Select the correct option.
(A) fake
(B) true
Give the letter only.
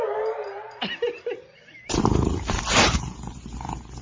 A